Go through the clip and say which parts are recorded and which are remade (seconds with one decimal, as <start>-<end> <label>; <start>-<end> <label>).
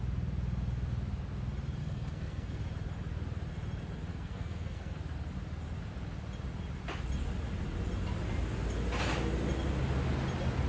0.0-1.8 recorded; 1.8-2.6 remade; 2.6-4.1 recorded; 4.1-5.0 remade; 5.0-10.7 recorded